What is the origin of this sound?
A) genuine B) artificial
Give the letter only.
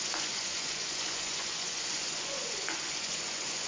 B